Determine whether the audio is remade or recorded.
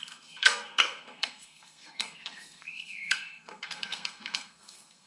remade